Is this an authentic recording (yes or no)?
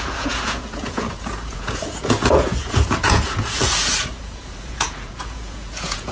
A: no